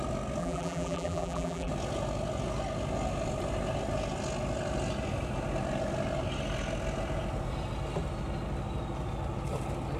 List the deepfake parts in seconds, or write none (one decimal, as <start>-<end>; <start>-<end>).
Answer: 0.4-1.7